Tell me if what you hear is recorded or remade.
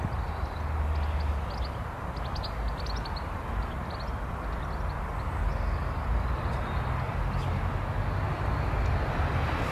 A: recorded